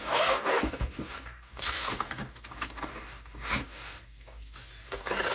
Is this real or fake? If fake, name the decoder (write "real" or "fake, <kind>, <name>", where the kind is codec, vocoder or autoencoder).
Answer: fake, codec, DAC